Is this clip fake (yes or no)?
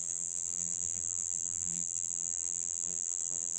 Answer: yes